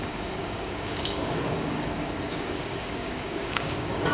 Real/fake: fake